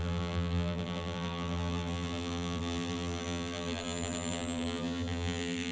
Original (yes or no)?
no